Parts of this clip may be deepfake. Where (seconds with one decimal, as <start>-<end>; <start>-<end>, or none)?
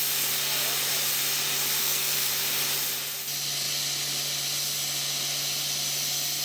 1.8-2.3